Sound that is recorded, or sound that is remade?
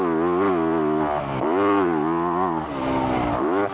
recorded